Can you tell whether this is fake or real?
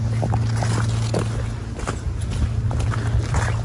real